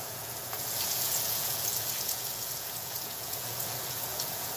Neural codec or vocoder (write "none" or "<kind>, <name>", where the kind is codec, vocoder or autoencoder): vocoder, Vocos